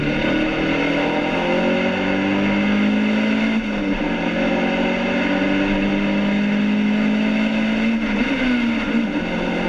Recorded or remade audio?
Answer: recorded